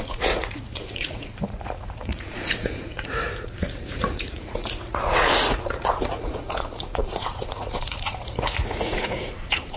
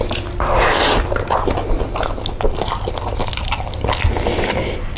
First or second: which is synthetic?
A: first